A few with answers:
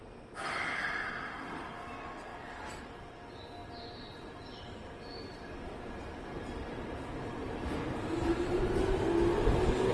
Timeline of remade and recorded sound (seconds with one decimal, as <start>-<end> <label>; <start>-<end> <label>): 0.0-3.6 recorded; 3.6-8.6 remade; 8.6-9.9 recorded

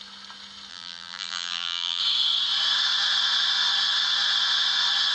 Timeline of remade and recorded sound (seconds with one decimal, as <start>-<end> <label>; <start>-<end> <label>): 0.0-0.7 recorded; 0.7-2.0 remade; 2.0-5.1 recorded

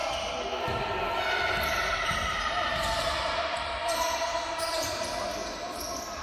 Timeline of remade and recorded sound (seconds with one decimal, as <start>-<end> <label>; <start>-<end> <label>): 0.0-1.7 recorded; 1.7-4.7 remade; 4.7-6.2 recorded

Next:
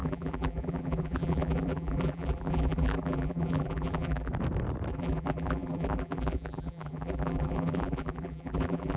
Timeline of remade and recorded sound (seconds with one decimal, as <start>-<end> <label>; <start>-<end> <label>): 0.0-4.3 remade; 4.3-4.9 recorded; 4.9-9.0 remade

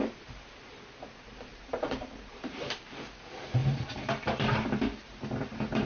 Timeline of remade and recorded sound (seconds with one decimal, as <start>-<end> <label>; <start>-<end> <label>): 0.0-1.5 recorded; 1.5-2.7 remade; 2.7-3.6 recorded; 3.6-5.9 remade

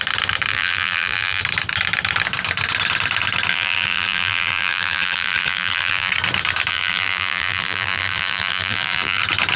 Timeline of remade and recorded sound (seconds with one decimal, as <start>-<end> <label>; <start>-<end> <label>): 0.0-0.5 recorded; 0.5-1.4 remade; 1.4-3.5 recorded; 3.5-6.1 remade; 6.1-6.7 recorded; 6.7-9.2 remade; 9.2-9.6 recorded

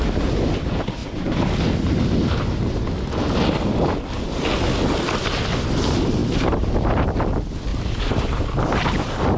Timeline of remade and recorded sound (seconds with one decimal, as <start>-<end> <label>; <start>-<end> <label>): 0.0-1.0 recorded; 1.0-1.5 remade; 1.5-6.2 recorded; 6.2-7.1 remade; 7.1-7.7 recorded; 7.7-8.5 remade; 8.5-9.4 recorded

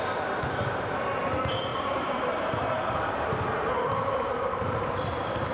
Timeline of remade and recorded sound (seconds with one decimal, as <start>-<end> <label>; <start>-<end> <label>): 0.0-1.7 recorded; 1.7-5.0 remade; 5.0-5.5 recorded